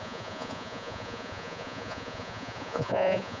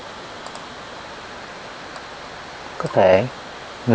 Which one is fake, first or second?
first